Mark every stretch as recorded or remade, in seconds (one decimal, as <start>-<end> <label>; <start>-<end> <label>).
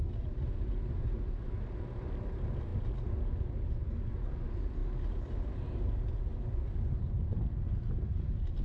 0.0-8.6 recorded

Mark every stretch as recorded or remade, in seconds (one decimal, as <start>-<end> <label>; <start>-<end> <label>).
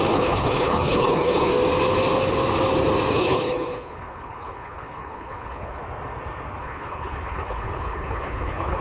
0.0-1.5 remade; 1.5-3.1 recorded; 3.1-5.8 remade; 5.8-6.6 recorded; 6.6-8.8 remade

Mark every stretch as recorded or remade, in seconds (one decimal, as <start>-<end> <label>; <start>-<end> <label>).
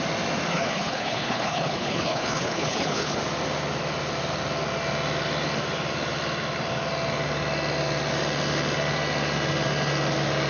0.0-0.5 recorded; 0.5-3.2 remade; 3.2-10.5 recorded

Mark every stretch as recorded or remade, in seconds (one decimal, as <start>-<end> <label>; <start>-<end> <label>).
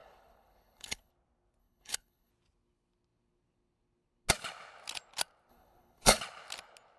0.0-1.1 remade; 1.1-1.6 recorded; 1.6-2.3 remade; 2.3-5.5 recorded; 5.5-6.2 remade; 6.2-7.0 recorded